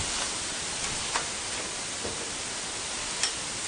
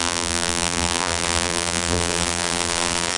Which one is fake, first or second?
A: second